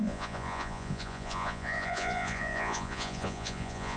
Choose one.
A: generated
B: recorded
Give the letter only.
A